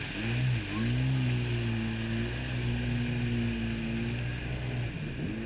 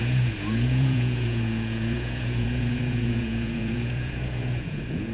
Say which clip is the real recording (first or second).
first